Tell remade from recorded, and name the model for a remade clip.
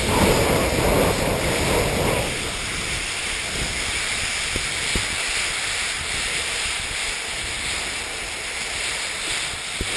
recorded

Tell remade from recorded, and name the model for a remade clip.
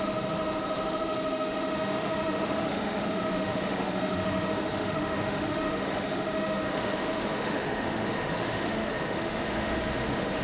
remade, autoencoder, DAC-VAE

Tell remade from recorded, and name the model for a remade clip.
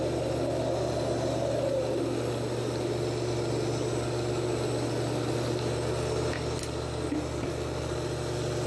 recorded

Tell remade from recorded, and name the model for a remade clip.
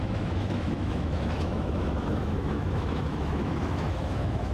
remade, autoencoder, DAC-VAE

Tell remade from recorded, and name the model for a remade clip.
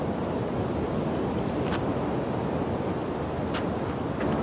recorded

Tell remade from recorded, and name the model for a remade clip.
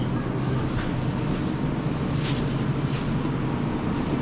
recorded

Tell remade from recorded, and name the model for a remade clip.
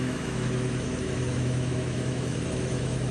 remade, autoencoder, DAC-VAE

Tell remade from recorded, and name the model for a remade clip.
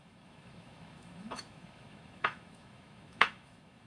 remade, autoencoder, DAC-VAE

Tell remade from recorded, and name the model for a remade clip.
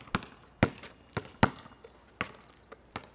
recorded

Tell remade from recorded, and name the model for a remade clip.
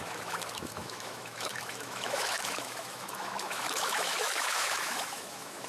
remade, autoencoder, DAC-VAE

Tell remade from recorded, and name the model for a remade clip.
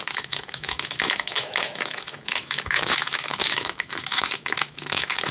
remade, autoencoder, DAC-VAE